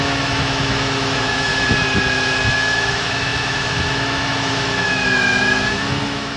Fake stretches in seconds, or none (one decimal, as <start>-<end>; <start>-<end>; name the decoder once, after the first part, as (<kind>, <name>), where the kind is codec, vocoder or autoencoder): 0.0-1.5 (autoencoder, DAC-VAE); 2.5-6.4